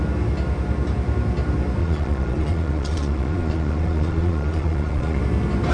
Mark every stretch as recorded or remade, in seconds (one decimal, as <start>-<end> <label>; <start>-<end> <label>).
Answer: 0.0-1.8 recorded; 1.8-5.2 remade; 5.2-5.7 recorded